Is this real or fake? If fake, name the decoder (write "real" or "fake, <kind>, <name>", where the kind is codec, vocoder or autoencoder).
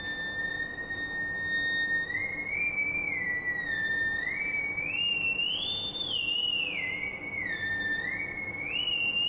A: real